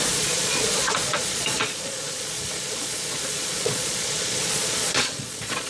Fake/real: fake